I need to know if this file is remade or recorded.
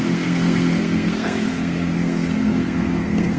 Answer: remade